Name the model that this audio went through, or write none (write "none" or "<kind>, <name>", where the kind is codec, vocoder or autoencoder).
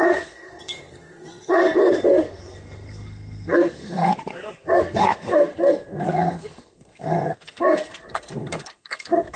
codec, SNAC